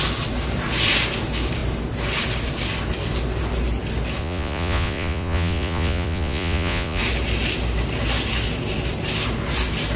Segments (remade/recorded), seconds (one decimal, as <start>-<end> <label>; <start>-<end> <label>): 0.0-4.2 recorded; 4.2-7.0 remade; 7.0-10.0 recorded